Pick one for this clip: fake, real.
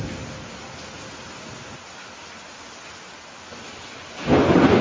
real